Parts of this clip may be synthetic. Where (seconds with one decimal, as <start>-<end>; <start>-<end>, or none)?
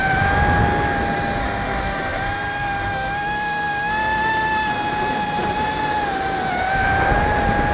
1.4-4.7